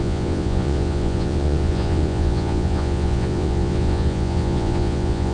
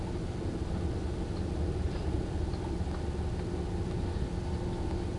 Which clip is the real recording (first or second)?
second